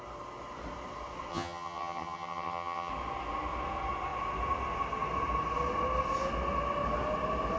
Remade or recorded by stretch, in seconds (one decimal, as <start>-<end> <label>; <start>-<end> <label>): 0.0-1.3 recorded; 1.3-2.9 remade; 2.9-7.6 recorded